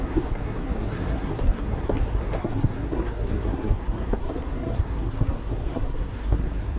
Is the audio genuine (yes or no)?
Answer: no